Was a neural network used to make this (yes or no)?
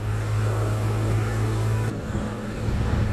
yes